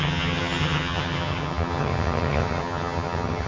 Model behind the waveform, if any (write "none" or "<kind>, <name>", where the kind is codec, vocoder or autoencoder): vocoder, HiFi-GAN